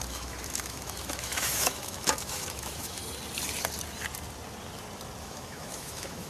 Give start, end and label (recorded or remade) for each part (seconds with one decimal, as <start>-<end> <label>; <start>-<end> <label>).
0.0-3.0 remade; 3.0-5.2 recorded; 5.2-6.3 remade